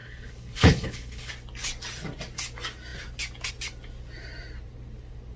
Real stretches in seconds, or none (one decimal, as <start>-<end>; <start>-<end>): 1.3-5.4